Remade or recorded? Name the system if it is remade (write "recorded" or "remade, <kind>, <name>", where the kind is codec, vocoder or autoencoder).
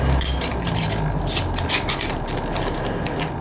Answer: recorded